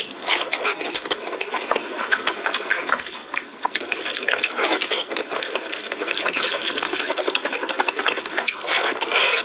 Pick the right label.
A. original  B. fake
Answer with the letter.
B